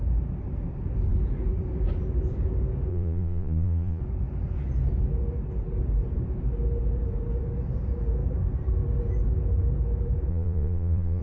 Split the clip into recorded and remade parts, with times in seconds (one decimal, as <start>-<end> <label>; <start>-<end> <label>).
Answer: 0.0-2.9 recorded; 2.9-4.0 remade; 4.0-10.3 recorded; 10.3-11.2 remade